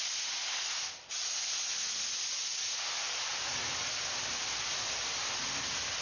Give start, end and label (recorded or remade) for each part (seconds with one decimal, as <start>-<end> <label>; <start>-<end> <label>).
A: 0.0-6.0 recorded